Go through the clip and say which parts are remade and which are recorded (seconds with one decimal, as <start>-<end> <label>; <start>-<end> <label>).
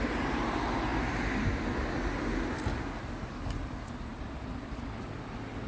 0.0-5.7 recorded